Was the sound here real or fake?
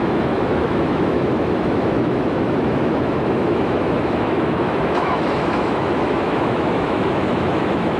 fake